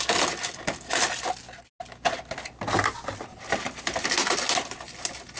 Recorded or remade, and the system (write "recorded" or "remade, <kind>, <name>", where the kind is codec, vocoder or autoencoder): recorded